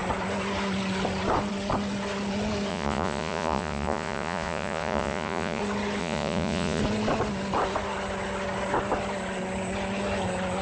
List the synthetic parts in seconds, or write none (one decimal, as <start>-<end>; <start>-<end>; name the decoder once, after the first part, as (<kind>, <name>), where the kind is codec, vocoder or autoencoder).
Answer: 2.7-5.6 (vocoder, Vocos); 6.0-6.8